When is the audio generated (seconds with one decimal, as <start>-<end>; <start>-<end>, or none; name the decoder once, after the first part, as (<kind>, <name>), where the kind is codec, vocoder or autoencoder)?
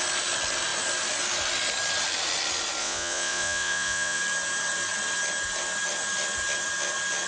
2.8-4.2 (vocoder, Vocos)